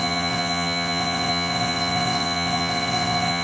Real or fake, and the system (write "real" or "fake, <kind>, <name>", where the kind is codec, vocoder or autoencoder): fake, vocoder, WaveNeXt